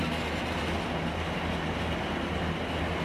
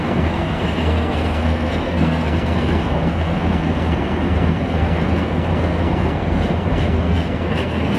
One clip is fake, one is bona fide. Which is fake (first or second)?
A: second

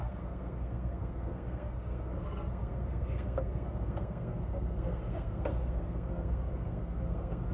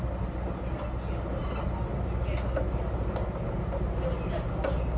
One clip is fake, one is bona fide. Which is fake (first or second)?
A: first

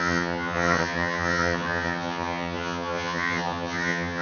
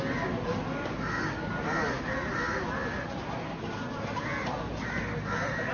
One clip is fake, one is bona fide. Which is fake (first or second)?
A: first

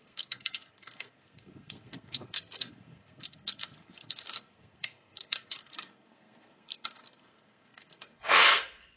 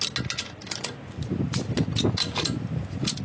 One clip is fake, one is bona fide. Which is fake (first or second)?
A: first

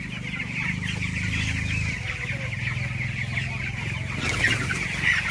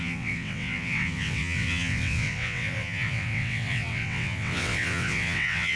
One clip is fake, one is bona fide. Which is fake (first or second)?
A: second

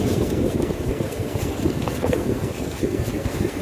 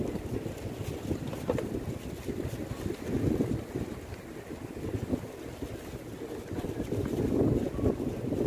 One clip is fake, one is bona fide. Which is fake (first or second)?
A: first